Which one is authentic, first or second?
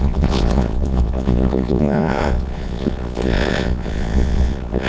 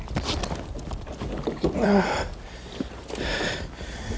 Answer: second